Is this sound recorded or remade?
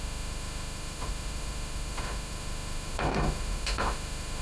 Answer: remade